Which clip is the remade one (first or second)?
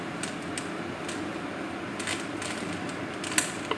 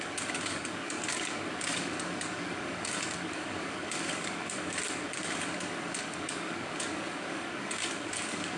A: second